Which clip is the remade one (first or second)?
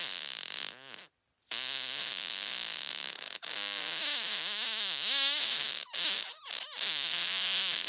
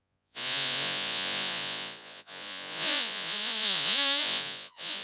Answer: second